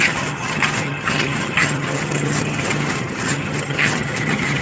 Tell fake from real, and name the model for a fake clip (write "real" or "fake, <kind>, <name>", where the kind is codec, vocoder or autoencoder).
fake, vocoder, HiFi-GAN